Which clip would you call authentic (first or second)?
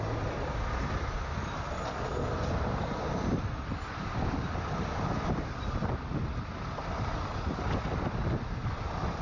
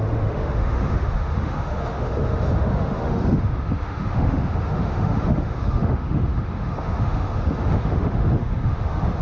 first